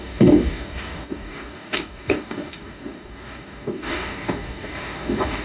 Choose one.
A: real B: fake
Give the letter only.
B